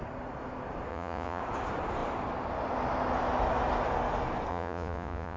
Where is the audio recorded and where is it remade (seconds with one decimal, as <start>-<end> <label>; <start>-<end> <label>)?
0.0-0.9 recorded; 0.9-1.4 remade; 1.4-4.5 recorded; 4.5-5.4 remade